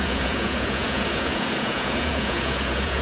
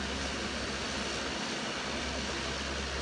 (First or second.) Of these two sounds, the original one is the second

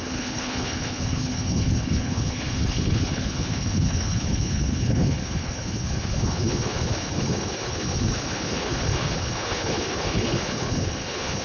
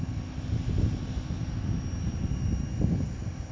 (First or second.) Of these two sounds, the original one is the second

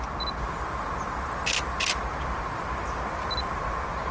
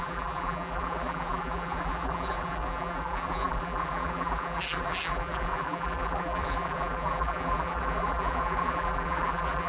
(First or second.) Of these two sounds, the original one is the first